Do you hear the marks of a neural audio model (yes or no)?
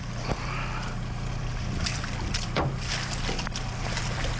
no